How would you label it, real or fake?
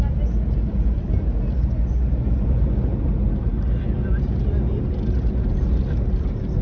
real